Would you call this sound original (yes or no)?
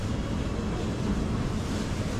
yes